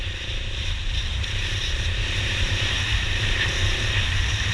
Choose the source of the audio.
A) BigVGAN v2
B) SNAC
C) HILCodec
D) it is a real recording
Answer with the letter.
A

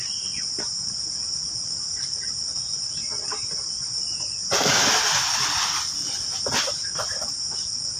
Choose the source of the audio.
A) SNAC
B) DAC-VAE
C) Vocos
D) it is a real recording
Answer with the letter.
D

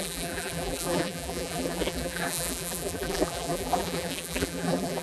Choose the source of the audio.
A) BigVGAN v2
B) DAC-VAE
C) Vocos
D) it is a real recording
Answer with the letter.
A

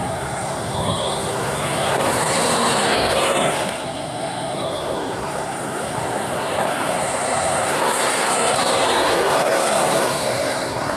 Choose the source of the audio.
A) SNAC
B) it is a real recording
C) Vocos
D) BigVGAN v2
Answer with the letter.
A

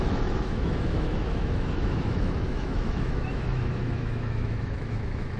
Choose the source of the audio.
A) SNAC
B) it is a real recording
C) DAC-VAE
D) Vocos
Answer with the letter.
C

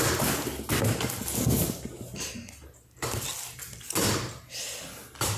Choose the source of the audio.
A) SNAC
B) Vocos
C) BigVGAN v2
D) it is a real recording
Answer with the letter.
D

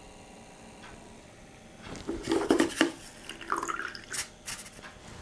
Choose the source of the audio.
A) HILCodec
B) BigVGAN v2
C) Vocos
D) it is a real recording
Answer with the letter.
D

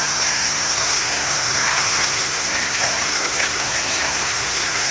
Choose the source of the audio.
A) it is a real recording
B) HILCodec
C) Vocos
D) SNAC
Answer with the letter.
D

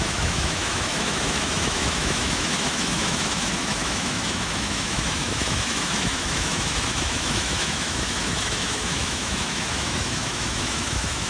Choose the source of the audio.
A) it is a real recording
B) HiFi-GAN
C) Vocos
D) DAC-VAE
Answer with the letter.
D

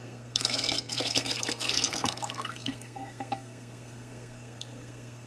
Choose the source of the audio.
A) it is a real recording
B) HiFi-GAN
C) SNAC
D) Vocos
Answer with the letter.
C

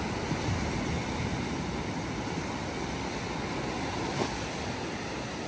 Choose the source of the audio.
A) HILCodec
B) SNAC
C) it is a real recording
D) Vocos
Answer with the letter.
C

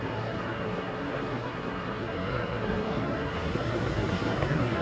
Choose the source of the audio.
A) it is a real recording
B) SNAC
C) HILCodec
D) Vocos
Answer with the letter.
B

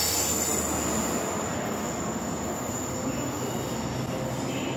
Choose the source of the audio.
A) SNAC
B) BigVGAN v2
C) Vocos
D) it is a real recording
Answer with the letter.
D